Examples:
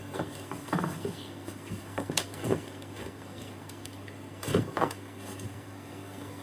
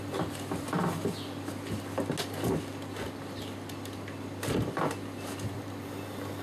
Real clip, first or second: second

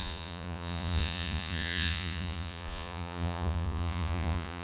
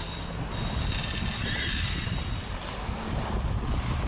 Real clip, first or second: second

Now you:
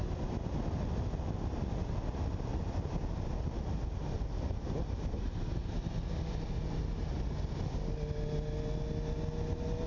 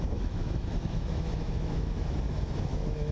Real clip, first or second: first